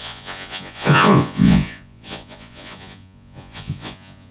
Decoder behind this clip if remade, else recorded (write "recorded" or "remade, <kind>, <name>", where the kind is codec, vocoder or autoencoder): remade, vocoder, Vocos